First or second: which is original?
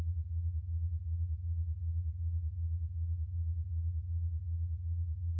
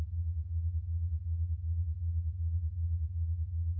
first